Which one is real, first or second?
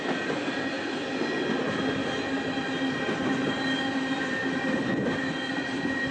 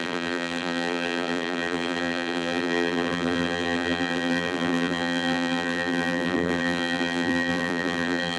first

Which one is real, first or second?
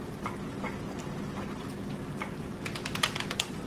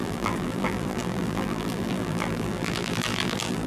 first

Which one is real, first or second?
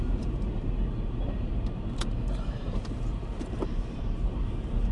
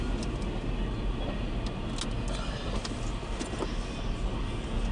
second